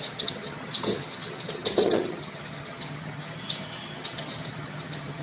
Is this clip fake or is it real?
fake